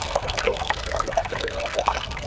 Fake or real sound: fake